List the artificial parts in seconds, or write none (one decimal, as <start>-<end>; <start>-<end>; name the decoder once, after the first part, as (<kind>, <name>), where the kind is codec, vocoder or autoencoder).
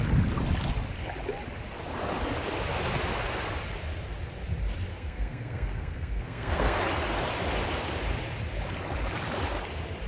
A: 4.9-6.8 (codec, SNAC)